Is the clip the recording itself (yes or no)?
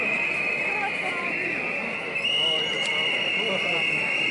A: yes